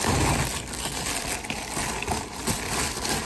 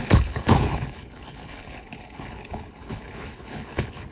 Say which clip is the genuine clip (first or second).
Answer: first